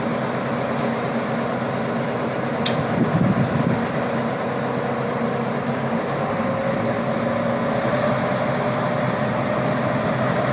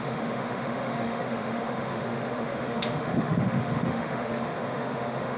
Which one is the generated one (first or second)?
second